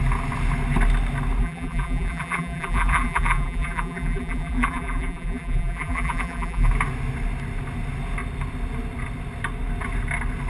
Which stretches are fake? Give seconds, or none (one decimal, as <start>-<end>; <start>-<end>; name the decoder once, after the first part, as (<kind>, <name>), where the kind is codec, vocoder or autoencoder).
1.4-6.7 (vocoder, BigVGAN v2)